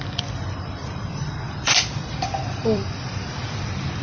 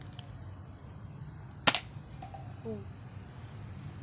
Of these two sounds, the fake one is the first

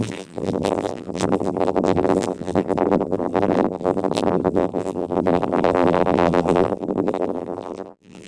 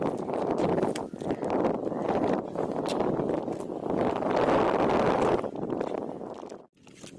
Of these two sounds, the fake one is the first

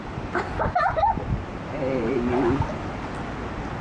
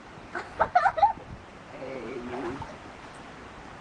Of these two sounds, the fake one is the second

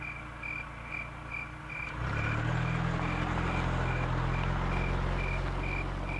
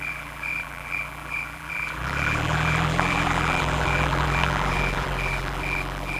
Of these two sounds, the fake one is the second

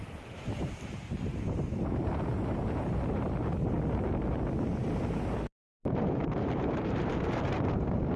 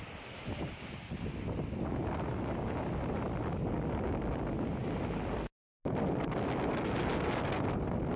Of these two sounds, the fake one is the first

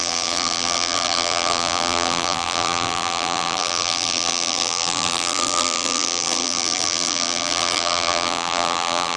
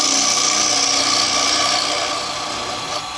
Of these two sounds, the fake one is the first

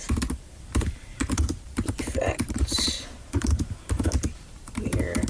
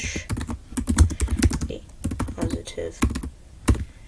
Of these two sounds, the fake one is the first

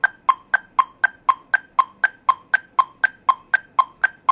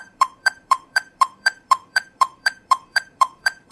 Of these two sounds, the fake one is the second